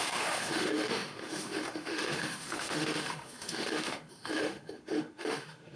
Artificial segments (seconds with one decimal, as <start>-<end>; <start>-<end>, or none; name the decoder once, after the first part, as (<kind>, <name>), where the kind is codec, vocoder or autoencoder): 0.0-5.8 (autoencoder, DAC-VAE)